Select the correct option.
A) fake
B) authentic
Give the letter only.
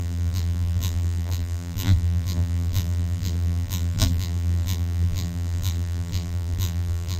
A